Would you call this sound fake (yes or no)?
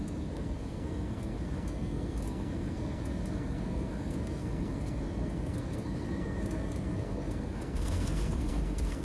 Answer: yes